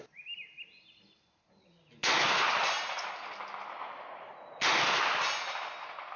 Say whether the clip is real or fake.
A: real